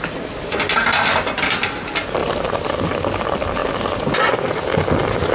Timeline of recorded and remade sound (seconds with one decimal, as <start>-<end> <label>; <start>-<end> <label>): 0.0-5.3 recorded